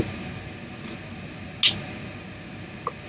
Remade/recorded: recorded